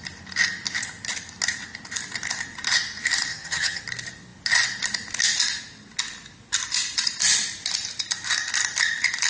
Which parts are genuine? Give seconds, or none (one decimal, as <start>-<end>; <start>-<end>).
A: 0.0-3.3; 3.8-9.3